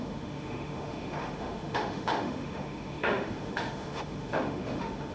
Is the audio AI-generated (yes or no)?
yes